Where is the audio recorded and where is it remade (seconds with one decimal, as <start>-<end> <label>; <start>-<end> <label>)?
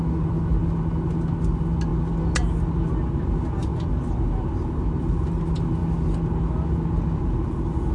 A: 0.0-7.9 recorded